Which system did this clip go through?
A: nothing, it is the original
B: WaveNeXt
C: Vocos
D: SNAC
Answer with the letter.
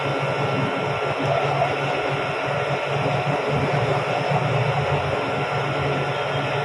A